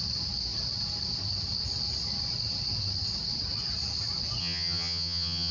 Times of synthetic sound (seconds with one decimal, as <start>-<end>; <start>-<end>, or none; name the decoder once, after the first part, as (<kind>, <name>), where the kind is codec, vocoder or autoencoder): 4.4-5.5 (vocoder, HiFi-GAN)